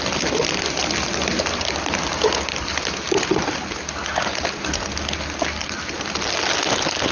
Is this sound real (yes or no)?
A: yes